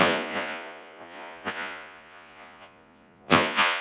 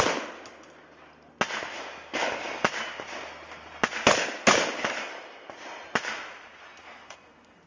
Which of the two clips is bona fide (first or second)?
second